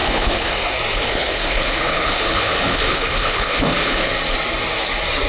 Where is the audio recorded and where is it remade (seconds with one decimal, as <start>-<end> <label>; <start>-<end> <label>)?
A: 0.0-0.5 remade; 0.5-0.9 recorded; 0.9-4.1 remade; 4.1-5.3 recorded